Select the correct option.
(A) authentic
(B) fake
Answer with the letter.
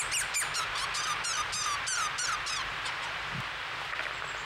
A